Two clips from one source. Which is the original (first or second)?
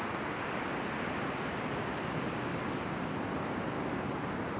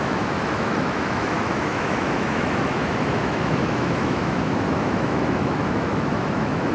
first